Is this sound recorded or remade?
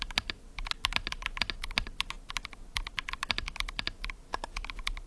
recorded